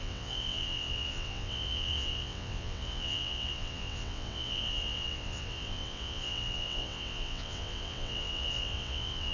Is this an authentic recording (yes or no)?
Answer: no